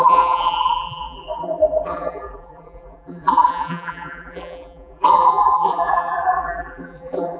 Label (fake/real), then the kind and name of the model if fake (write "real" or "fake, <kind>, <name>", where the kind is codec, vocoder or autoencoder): fake, vocoder, BigVGAN v2